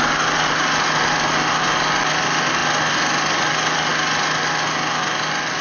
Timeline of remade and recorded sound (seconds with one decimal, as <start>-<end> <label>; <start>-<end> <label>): 0.0-5.6 recorded